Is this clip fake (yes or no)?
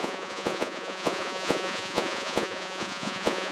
yes